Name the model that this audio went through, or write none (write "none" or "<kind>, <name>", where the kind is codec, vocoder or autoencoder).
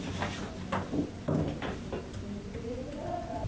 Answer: none